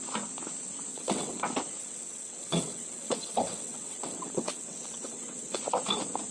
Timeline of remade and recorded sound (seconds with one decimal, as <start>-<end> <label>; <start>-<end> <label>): 0.0-0.9 recorded; 0.9-1.4 remade; 1.4-1.8 recorded; 1.8-5.6 remade; 5.6-6.3 recorded